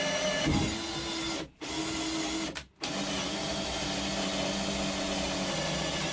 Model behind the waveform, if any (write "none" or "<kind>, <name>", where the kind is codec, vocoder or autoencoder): none